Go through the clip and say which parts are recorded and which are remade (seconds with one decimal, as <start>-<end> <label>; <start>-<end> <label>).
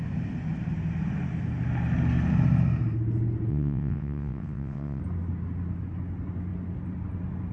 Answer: 0.0-3.5 recorded; 3.5-5.0 remade; 5.0-7.5 recorded